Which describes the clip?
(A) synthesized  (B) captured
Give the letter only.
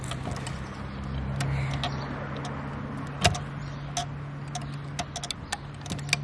B